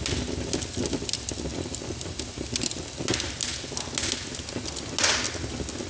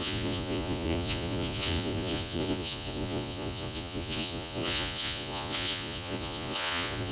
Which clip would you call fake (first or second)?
second